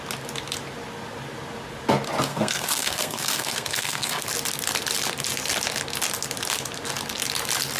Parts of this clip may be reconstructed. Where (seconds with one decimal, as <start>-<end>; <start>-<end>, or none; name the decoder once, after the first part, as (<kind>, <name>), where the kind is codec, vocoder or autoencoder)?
2.3-4.2 (codec, SNAC)